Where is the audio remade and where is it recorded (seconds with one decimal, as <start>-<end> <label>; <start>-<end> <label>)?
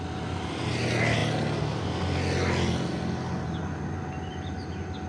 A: 0.0-5.1 recorded